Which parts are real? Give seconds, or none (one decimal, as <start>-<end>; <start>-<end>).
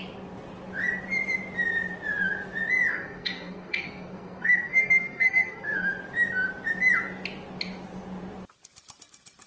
0.0-2.9; 5.9-9.5